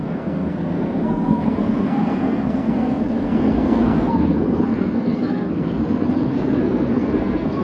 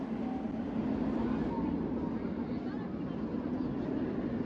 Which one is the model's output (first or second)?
first